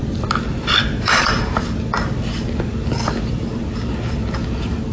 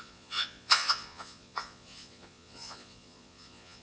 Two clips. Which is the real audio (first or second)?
first